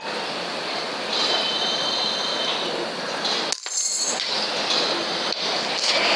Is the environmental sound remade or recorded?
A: recorded